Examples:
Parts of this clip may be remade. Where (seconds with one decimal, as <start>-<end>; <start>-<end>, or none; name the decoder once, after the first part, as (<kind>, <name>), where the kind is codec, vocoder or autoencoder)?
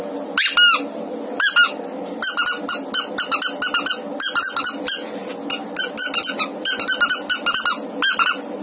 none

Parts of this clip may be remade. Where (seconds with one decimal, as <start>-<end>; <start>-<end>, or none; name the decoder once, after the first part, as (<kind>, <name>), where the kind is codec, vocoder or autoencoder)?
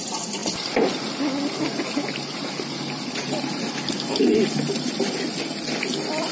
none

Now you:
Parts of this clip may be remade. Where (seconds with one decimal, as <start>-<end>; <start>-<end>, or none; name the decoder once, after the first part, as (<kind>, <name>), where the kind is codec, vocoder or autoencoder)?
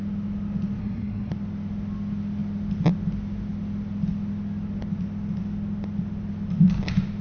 0.8-1.3 (codec, SNAC)